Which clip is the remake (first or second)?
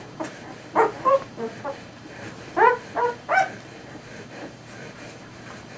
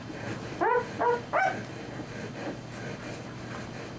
first